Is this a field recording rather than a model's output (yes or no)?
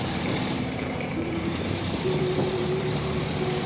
no